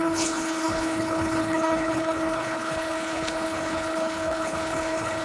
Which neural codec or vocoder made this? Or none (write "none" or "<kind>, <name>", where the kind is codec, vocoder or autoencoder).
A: codec, HILCodec